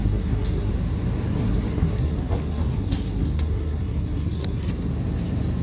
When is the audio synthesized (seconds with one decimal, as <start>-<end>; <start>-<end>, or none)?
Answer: 0.0-0.7; 1.3-4.7